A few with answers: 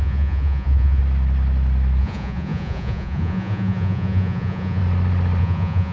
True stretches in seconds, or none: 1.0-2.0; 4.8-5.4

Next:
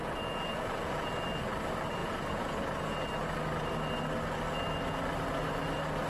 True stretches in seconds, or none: 1.1-2.0; 2.6-6.1

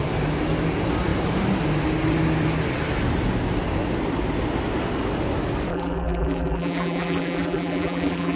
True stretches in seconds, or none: 0.0-5.7

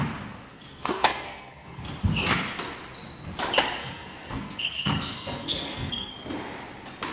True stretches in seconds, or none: 0.0-0.5; 1.8-3.8; 6.1-7.1

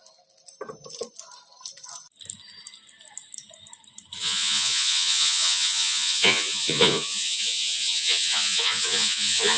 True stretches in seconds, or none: 0.0-4.2

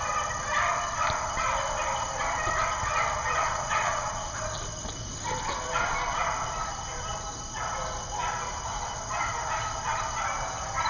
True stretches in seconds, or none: 0.0-3.2; 4.4-10.9

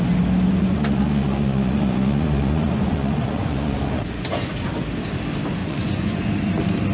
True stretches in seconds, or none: 0.0-0.5; 4.5-5.6; 6.3-6.9